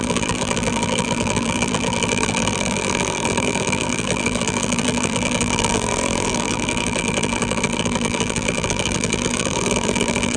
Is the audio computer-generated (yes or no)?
yes